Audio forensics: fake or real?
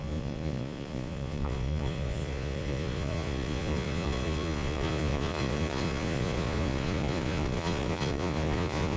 fake